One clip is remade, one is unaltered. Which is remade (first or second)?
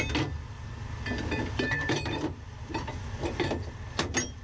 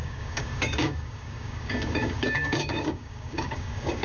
second